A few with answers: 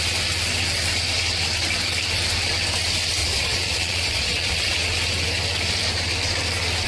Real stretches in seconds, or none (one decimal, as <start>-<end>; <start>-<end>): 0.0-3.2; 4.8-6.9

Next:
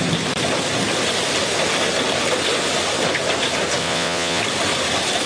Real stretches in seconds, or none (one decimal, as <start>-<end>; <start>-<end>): 0.0-3.8; 4.4-5.3

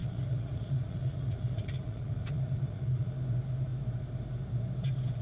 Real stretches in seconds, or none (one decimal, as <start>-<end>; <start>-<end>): 3.1-5.2

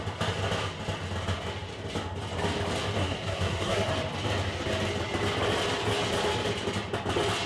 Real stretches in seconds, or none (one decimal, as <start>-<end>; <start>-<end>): 0.0-3.0; 3.9-7.5